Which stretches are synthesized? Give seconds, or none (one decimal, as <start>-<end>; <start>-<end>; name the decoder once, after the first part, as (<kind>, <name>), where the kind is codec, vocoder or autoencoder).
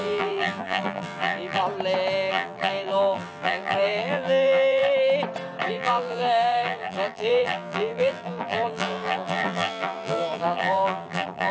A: 0.0-1.6 (vocoder, BigVGAN v2); 2.3-4.8; 5.7-11.5